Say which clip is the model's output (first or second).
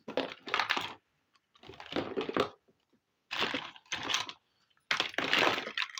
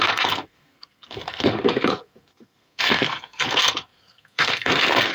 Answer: second